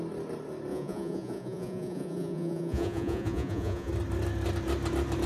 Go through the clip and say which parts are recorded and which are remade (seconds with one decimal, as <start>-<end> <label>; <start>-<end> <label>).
0.0-0.7 recorded; 0.7-3.9 remade; 3.9-5.3 recorded